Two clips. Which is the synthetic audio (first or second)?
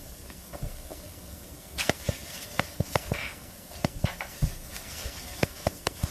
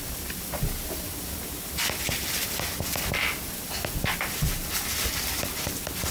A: first